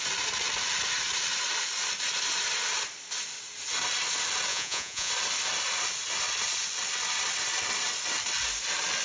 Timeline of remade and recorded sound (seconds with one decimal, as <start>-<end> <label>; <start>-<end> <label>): 0.0-4.5 recorded; 4.5-5.1 remade; 5.1-9.0 recorded